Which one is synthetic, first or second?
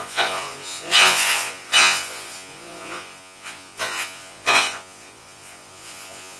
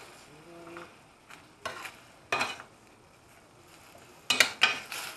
first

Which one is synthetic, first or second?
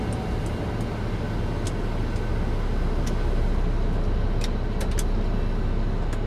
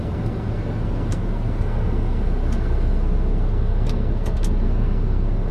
second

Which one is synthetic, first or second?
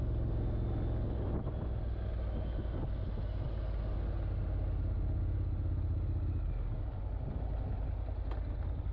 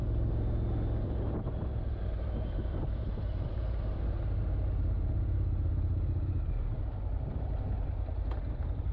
second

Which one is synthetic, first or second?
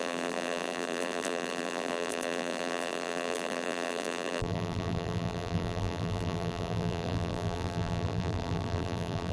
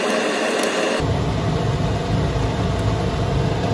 first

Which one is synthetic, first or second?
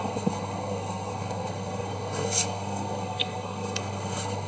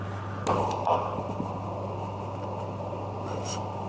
first